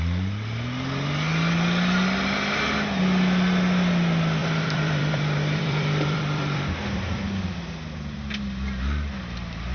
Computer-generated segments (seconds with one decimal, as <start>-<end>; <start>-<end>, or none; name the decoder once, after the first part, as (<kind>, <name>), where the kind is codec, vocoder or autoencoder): 4.4-7.6 (vocoder, BigVGAN v2)